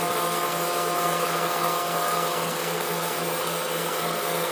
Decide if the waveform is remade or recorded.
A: remade